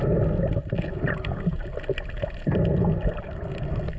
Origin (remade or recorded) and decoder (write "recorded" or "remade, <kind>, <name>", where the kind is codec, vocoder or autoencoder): recorded